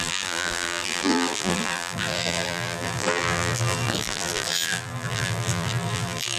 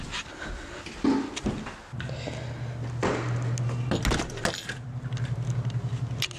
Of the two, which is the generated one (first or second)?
first